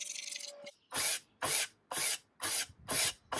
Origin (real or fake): real